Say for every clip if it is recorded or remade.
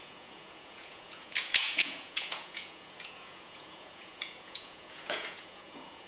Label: remade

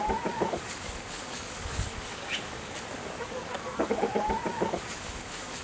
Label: remade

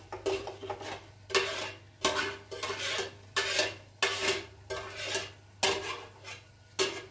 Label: recorded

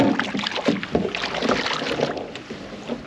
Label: recorded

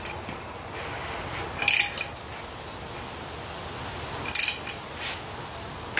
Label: recorded